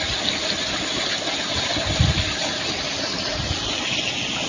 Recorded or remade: recorded